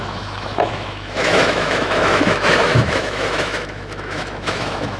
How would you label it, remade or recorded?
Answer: remade